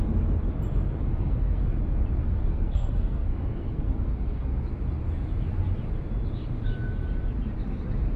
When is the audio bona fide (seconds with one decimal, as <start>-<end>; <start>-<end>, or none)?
0.0-1.1; 1.8-2.2; 4.6-8.2